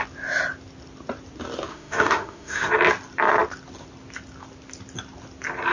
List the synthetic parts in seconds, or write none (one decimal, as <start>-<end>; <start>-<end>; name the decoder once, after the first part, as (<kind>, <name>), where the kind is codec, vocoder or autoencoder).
1.7-2.7 (autoencoder, DAC-VAE)

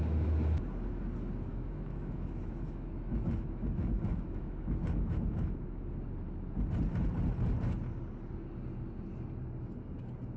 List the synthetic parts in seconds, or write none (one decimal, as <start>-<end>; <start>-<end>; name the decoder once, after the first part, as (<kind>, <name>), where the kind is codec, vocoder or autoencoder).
1.5-5.9 (autoencoder, DAC-VAE)

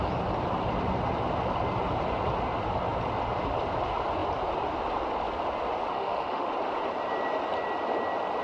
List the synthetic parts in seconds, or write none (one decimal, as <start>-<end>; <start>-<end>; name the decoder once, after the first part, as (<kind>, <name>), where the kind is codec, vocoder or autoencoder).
5.9-6.5 (autoencoder, DAC-VAE)

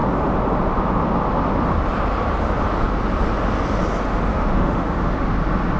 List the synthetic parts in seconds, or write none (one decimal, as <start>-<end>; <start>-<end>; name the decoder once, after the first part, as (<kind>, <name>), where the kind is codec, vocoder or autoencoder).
4.3-5.3 (autoencoder, DAC-VAE)